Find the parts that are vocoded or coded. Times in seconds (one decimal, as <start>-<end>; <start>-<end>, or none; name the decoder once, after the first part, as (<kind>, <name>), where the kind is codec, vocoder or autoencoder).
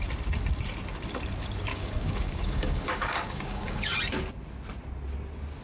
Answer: 1.7-3.9 (codec, DAC)